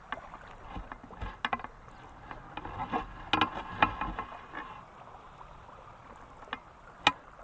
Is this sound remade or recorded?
recorded